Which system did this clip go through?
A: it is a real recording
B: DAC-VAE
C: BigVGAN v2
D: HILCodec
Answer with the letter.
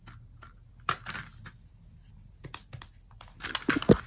A